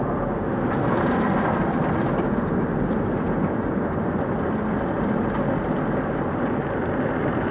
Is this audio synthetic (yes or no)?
no